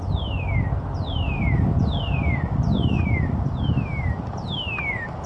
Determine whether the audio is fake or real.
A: real